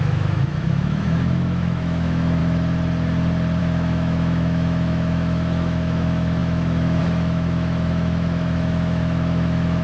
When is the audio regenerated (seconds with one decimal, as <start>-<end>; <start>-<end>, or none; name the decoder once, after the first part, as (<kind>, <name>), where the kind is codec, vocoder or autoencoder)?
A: 0.0-2.4 (autoencoder, DAC-VAE); 3.6-9.8